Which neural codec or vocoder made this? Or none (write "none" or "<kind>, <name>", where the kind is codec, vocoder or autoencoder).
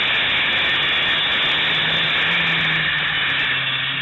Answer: none